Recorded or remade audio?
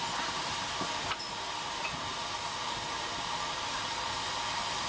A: recorded